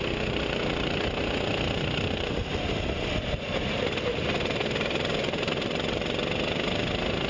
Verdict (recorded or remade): recorded